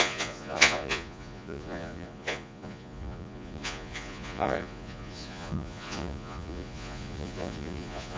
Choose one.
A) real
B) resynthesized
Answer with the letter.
B